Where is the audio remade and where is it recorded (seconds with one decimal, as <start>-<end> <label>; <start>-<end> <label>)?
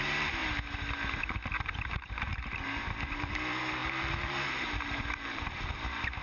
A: 0.0-0.4 remade; 0.4-1.9 recorded; 1.9-6.2 remade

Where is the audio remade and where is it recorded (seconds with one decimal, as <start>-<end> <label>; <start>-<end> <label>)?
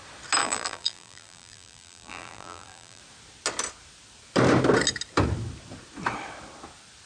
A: 0.0-0.4 recorded; 0.4-3.0 remade; 3.0-7.1 recorded